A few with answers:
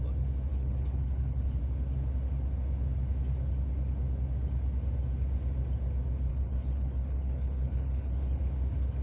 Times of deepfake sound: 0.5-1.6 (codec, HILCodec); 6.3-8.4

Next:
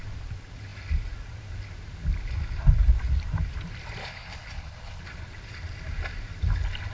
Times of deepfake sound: 4.0-5.0 (codec, HILCodec)

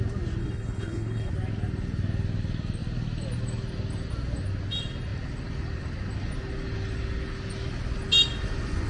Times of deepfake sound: 0.4-1.3 (codec, HILCodec)

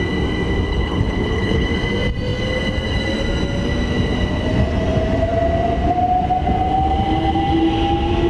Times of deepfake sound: 0.7-1.7 (codec, HILCodec)

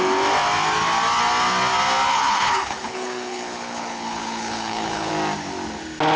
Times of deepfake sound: 2.1-5.1 (codec, HILCodec)

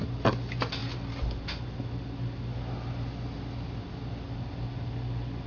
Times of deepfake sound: none

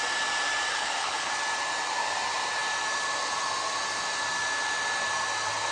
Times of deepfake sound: 0.7-1.3 (codec, HILCodec)